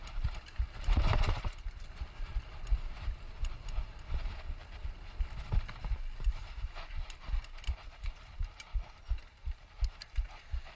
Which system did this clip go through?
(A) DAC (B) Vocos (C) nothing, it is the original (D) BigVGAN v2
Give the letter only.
D